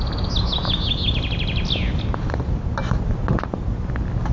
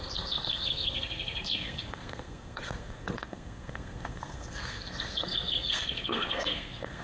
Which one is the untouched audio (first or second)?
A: first